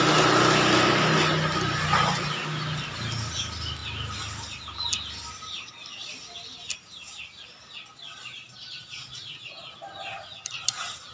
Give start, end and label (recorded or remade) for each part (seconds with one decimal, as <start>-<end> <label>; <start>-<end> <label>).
0.0-11.1 recorded